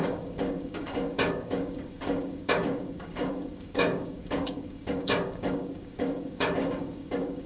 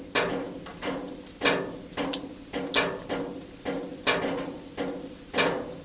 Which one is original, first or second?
second